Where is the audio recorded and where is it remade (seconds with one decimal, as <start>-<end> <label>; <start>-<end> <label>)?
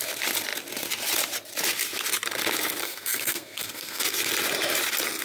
0.0-2.8 recorded; 2.8-4.0 remade; 4.0-5.2 recorded